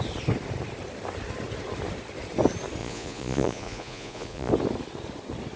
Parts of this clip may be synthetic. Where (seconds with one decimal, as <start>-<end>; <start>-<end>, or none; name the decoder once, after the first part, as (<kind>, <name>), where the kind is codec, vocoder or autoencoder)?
2.8-4.5 (vocoder, Vocos)